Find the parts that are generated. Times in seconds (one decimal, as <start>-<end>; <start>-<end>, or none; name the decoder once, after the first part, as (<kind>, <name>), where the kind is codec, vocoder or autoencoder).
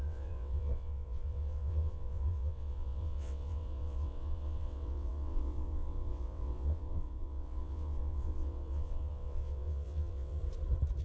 0.0-10.4 (vocoder, WaveNeXt)